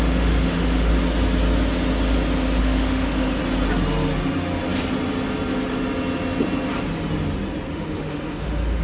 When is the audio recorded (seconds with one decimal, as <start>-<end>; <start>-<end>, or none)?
0.9-2.6; 3.4-7.7